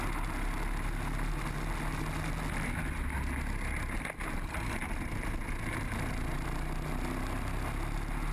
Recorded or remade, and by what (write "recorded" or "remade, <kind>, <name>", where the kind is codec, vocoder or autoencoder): recorded